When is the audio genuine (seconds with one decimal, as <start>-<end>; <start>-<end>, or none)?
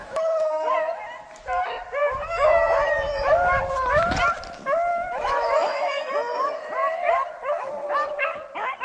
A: 0.7-2.0; 3.6-4.9; 5.9-8.8